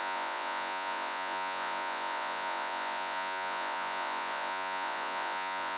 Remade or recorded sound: remade